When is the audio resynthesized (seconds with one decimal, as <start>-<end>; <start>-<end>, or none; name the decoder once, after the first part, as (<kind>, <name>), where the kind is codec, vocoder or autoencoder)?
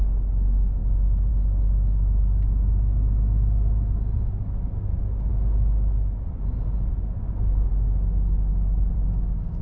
8.5-9.0 (vocoder, BigVGAN v2)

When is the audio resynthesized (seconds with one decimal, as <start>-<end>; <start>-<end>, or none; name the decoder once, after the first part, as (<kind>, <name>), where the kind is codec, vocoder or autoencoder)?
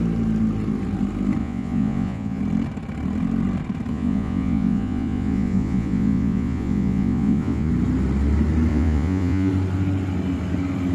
1.4-2.4 (vocoder, Vocos); 3.9-7.7; 8.7-9.5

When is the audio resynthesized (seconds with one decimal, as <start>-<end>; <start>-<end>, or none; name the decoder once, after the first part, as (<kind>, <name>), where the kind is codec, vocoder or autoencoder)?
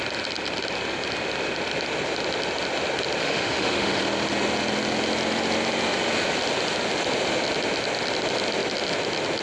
3.2-4.0 (autoencoder, DAC-VAE)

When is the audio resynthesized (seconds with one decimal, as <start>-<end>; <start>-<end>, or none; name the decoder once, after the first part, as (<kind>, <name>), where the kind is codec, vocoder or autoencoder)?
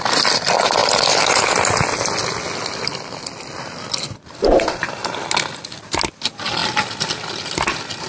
none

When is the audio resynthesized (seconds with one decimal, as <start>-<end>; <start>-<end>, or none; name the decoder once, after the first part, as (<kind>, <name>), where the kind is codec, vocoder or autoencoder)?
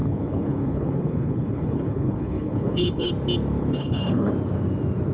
0.0-3.1 (codec, HILCodec); 3.6-4.3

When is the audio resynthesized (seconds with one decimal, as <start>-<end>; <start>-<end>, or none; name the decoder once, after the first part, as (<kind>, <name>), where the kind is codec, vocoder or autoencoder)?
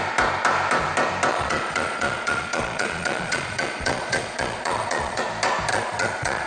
1.3-5.2 (vocoder, Vocos); 5.7-6.5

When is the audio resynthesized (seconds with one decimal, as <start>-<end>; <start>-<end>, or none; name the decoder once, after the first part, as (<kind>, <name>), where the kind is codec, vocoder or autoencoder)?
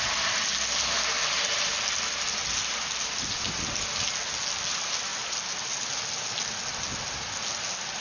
none